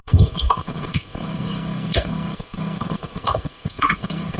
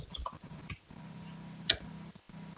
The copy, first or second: first